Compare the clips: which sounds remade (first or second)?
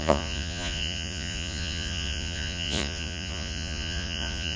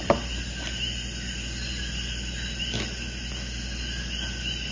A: first